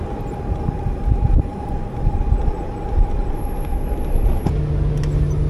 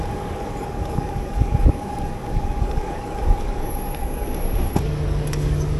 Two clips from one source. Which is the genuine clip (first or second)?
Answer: first